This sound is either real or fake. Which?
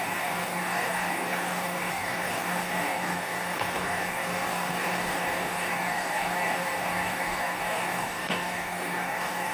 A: fake